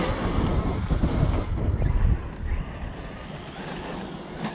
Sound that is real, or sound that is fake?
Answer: real